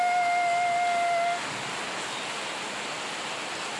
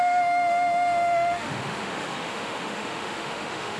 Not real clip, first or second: second